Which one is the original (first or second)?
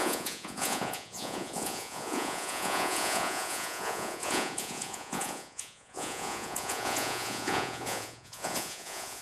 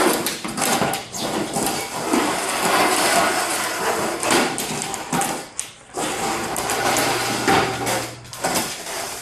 second